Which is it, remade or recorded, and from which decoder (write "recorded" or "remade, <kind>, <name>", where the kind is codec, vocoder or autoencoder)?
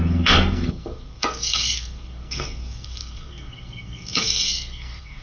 remade, codec, SNAC